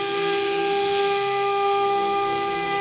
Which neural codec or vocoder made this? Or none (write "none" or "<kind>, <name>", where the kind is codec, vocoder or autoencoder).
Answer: codec, SNAC